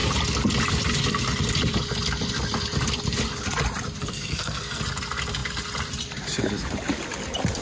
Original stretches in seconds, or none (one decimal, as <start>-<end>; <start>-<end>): 0.0-4.0; 4.8-7.6